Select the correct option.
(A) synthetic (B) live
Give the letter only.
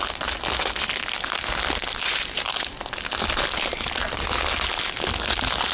B